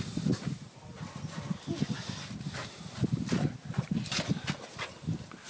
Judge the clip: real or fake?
real